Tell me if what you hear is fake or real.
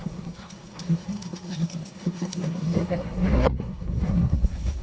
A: fake